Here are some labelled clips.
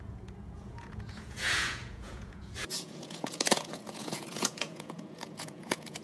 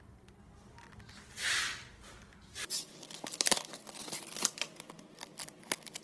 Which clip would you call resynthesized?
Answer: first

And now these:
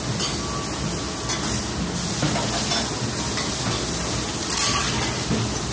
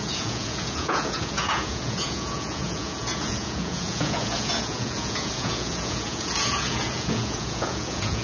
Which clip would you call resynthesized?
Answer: second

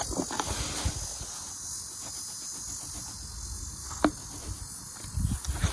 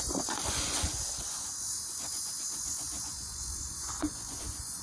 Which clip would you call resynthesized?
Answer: second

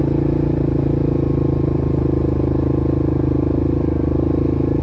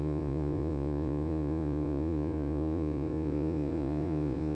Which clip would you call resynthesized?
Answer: second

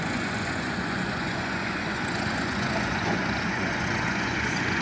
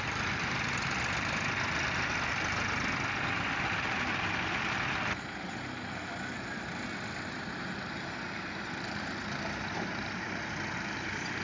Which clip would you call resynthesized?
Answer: first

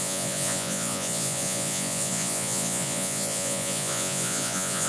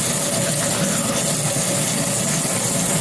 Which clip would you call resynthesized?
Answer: first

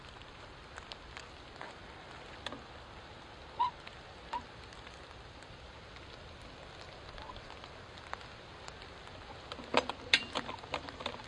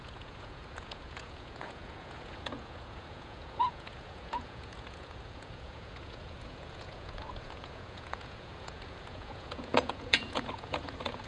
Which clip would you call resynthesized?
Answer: second